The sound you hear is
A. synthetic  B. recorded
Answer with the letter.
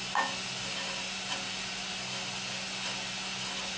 B